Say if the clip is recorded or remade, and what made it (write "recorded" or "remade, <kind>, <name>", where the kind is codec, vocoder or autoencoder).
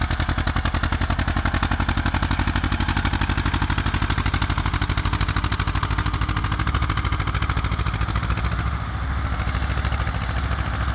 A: recorded